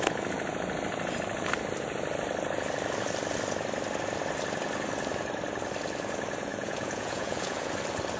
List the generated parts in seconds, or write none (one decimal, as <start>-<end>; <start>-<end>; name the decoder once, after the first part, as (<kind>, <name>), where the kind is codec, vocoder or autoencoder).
6.5-7.7 (vocoder, Vocos)